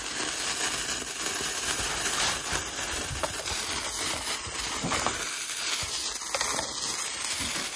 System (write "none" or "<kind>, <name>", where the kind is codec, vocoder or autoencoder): none